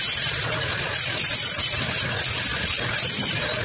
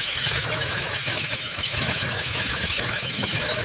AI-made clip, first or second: second